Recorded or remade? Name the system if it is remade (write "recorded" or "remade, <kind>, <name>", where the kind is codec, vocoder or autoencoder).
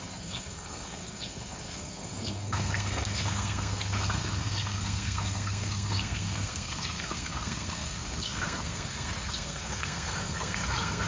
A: remade, codec, SNAC